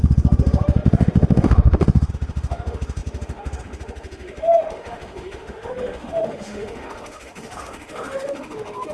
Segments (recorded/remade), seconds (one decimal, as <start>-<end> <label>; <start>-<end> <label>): 0.0-8.9 remade

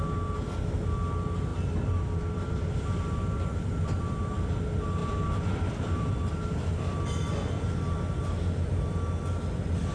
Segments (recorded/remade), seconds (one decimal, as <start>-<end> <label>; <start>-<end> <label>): 0.0-1.5 recorded; 1.5-4.0 remade; 4.0-5.0 recorded; 5.0-6.1 remade; 6.1-9.9 recorded

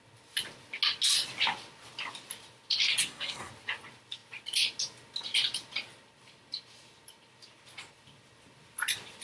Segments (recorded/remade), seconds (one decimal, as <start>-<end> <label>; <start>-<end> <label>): 0.0-3.0 recorded; 3.0-3.5 remade; 3.5-9.2 recorded

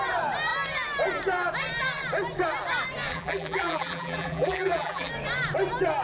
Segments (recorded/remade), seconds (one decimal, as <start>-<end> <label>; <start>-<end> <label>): 0.0-3.1 recorded; 3.1-5.1 remade; 5.1-6.0 recorded